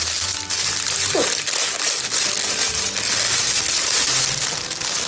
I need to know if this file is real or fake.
real